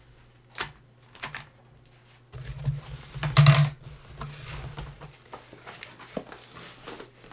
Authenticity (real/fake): real